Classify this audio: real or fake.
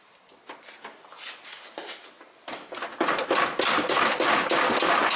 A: real